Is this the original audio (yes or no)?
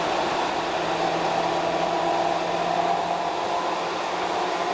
yes